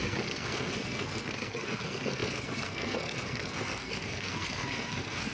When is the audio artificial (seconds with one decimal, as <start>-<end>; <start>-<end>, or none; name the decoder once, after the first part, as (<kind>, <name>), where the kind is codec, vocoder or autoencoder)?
0.0-5.3 (codec, SNAC)